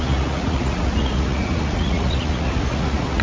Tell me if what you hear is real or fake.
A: fake